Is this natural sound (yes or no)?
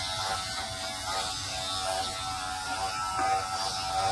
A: yes